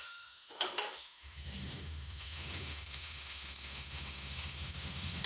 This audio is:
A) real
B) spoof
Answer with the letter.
B